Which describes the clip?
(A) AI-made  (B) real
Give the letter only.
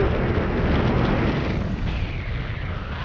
B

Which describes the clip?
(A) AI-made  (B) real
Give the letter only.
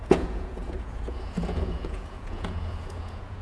A